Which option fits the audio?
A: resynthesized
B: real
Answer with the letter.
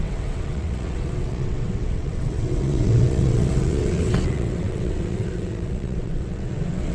A